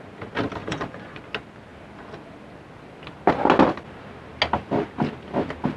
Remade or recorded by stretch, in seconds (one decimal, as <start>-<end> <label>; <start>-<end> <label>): 0.0-0.6 recorded; 0.6-1.2 remade; 1.2-5.8 recorded